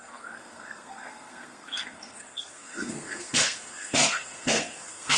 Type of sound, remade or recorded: remade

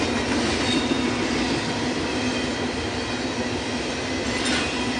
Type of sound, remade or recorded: recorded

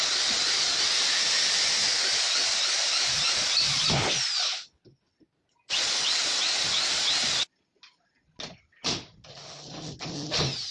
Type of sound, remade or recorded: recorded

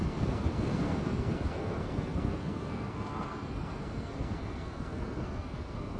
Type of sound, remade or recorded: remade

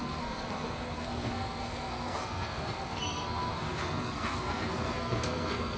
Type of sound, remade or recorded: remade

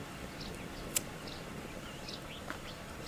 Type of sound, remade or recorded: recorded